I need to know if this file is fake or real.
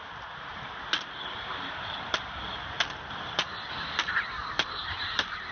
real